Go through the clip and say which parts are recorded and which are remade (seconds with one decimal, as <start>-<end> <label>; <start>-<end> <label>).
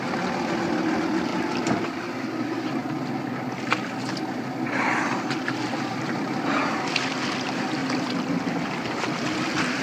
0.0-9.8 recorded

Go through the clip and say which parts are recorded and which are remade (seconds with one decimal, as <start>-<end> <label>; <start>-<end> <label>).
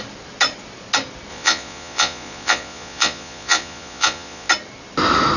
0.0-1.3 recorded; 1.3-4.5 remade; 4.5-5.4 recorded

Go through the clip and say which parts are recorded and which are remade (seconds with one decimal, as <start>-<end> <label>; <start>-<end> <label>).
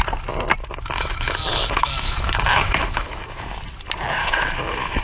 0.0-0.6 recorded; 0.6-3.6 remade; 3.6-4.2 recorded; 4.2-5.0 remade